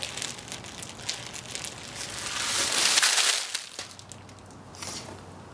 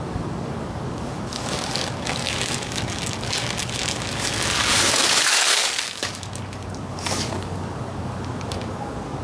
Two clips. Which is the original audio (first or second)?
first